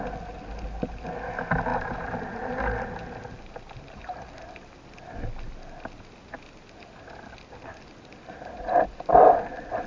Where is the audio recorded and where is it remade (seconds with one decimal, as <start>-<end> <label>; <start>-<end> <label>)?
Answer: 0.0-9.9 recorded